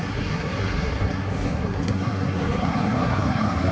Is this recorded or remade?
remade